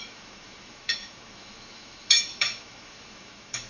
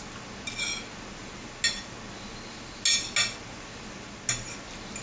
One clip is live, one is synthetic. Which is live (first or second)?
second